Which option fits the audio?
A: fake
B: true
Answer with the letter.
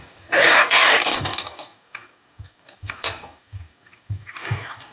A